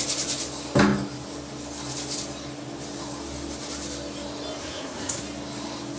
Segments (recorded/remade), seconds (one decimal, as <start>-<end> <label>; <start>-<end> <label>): 0.0-4.6 recorded; 4.6-5.2 remade; 5.2-6.0 recorded